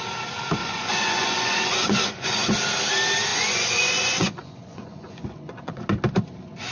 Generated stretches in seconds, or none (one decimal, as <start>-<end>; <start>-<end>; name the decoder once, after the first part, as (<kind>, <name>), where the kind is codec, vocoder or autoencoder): 0.6-2.5 (vocoder, Vocos); 3.3-5.8